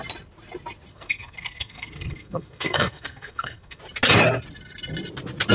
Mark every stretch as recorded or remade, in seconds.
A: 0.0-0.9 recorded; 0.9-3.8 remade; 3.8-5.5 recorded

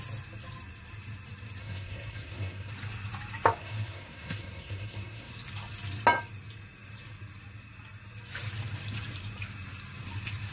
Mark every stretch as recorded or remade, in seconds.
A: 0.0-1.6 recorded; 1.6-2.7 remade; 2.7-3.6 recorded; 3.6-5.3 remade; 5.3-10.5 recorded

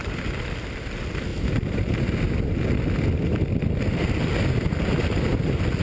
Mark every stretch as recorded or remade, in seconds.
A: 0.0-1.3 recorded; 1.3-2.0 remade; 2.0-5.8 recorded

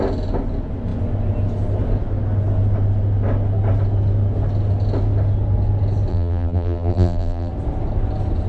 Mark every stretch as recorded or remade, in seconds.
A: 0.0-6.1 recorded; 6.1-7.5 remade; 7.5-8.5 recorded